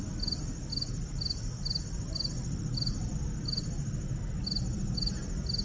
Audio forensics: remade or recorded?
recorded